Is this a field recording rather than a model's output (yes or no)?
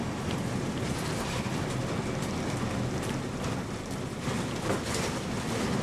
yes